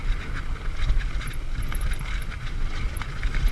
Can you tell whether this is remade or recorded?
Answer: recorded